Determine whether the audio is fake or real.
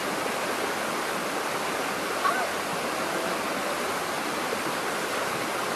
real